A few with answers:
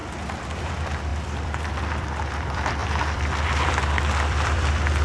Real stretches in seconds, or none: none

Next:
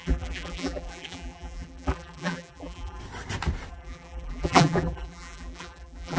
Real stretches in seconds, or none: 3.0-3.7

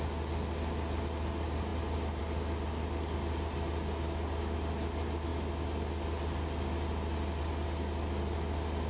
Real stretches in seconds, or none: 0.0-8.9

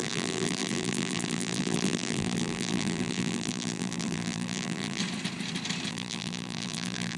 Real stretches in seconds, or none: 5.0-5.9

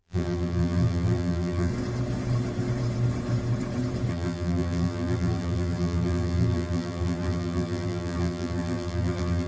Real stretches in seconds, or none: 1.7-4.1

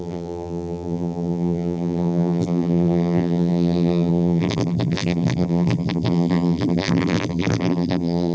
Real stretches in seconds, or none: none

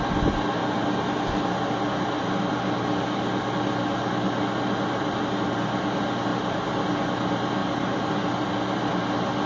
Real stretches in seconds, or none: 0.0-6.3; 6.9-7.6; 8.1-9.5